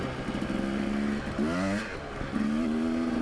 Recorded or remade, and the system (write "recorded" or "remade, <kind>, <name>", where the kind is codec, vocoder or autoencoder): recorded